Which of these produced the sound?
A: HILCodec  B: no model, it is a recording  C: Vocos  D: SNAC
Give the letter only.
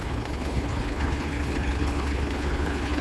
A